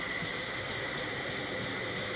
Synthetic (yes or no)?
no